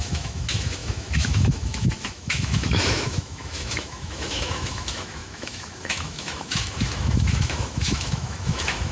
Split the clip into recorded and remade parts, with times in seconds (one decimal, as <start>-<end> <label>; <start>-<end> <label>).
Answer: 0.0-8.9 remade

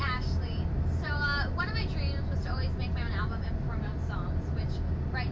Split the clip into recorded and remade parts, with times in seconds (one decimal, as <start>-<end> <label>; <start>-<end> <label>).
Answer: 0.0-5.3 recorded

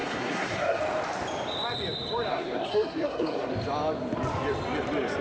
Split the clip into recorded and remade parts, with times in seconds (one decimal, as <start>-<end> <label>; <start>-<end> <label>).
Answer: 0.0-0.8 remade; 0.8-2.3 recorded; 2.3-3.5 remade; 3.5-5.2 recorded

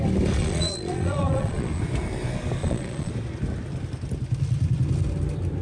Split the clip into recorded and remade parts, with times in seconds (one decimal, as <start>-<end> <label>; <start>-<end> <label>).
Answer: 0.0-0.4 recorded; 0.4-1.8 remade; 1.8-2.6 recorded; 2.6-3.1 remade; 3.1-5.6 recorded

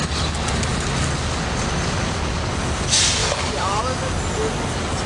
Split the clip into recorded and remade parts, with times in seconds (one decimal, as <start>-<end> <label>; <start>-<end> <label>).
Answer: 0.0-3.2 recorded; 3.2-3.8 remade; 3.8-5.1 recorded

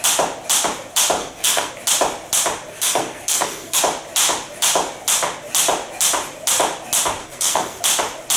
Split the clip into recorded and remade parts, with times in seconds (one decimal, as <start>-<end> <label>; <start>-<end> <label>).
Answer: 0.0-1.2 recorded; 1.2-1.7 remade; 1.7-2.7 recorded; 2.7-3.8 remade; 3.8-7.2 recorded; 7.2-7.8 remade; 7.8-8.4 recorded

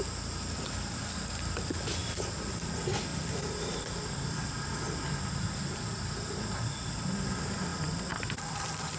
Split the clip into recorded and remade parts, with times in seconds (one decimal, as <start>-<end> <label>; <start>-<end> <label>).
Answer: 0.0-2.0 recorded; 2.0-2.7 remade; 2.7-3.1 recorded; 3.1-5.0 remade; 5.0-7.7 recorded; 7.7-9.0 remade

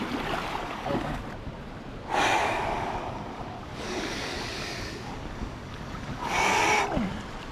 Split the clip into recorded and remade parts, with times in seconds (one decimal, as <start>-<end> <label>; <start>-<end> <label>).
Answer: 0.0-0.6 recorded; 0.6-1.2 remade; 1.2-2.4 recorded; 2.4-6.7 remade; 6.7-7.5 recorded